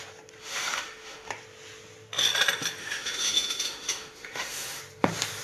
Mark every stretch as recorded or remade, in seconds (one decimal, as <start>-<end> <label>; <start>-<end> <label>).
0.0-0.4 recorded; 0.4-1.3 remade; 1.3-2.8 recorded; 2.8-4.8 remade; 4.8-5.4 recorded